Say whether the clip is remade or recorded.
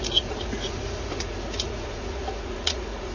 remade